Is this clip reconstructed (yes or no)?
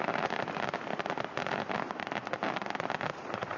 no